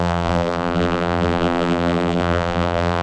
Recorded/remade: remade